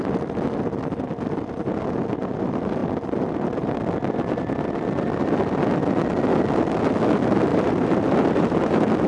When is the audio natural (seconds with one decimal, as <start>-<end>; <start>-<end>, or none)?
0.0-7.5